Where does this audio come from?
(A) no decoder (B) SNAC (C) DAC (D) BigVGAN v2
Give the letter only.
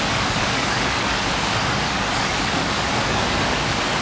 C